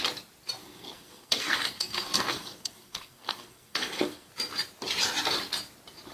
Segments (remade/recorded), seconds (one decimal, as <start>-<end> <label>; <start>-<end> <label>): 0.0-0.6 recorded; 0.6-4.3 remade; 4.3-6.1 recorded